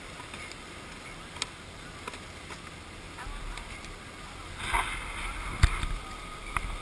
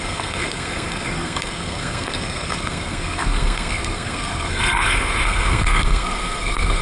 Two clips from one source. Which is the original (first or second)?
first